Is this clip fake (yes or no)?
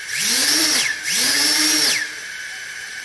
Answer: no